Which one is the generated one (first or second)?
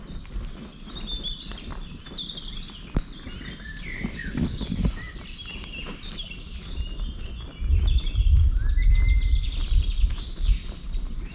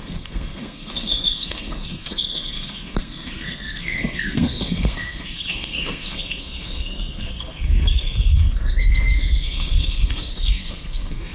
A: second